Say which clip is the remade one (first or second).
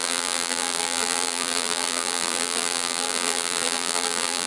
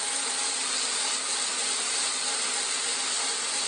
first